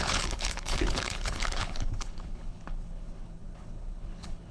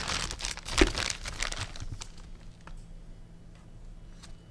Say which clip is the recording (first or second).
second